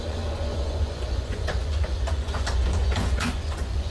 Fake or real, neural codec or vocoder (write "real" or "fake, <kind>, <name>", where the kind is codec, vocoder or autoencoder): fake, vocoder, Vocos